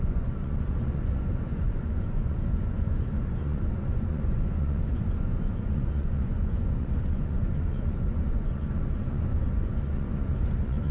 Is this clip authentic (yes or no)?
no